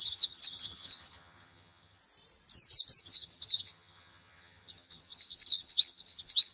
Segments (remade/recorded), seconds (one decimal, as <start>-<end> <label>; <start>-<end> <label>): 0.0-2.0 remade; 2.0-3.0 recorded; 3.0-6.5 remade